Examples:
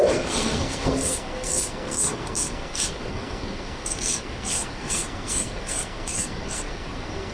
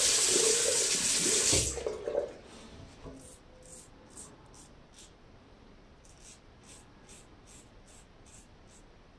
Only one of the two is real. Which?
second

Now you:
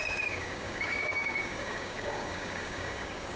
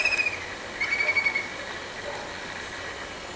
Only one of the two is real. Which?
second